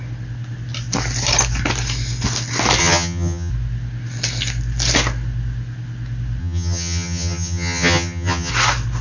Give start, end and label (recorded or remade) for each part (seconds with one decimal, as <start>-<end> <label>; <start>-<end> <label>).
0.0-2.8 recorded; 2.8-3.5 remade; 3.5-6.4 recorded; 6.4-8.5 remade; 8.5-9.0 recorded